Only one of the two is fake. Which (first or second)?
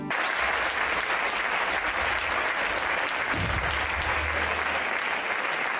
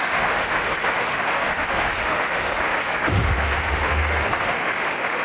second